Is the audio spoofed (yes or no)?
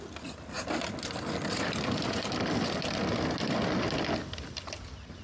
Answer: no